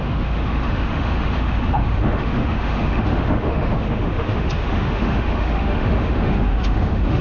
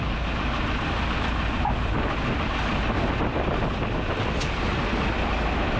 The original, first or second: second